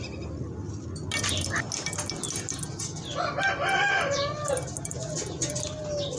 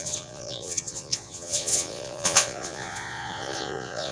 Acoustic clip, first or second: first